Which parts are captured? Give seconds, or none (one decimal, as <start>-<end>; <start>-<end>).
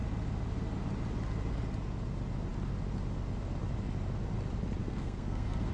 0.0-4.8